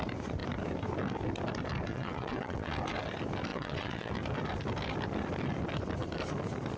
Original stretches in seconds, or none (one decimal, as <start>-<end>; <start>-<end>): 0.0-1.9; 2.7-3.5; 4.1-6.8